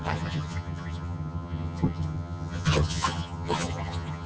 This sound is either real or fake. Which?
fake